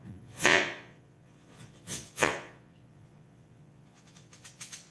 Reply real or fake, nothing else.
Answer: fake